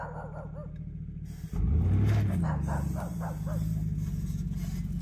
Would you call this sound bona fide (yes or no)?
yes